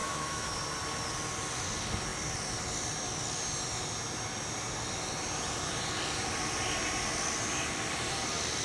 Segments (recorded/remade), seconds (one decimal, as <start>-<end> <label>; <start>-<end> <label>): 0.0-0.6 remade; 0.6-8.6 recorded